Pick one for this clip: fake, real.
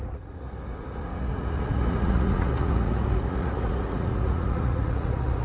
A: fake